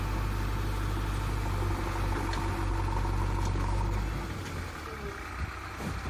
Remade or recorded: recorded